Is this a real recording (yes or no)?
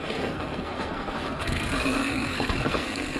no